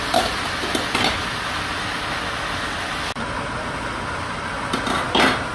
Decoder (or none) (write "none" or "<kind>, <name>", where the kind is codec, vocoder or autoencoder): none